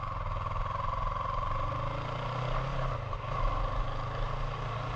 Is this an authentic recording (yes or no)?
yes